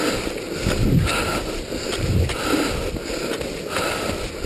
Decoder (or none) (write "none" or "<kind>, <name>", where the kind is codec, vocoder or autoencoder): none